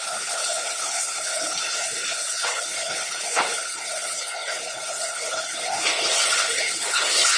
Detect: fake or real fake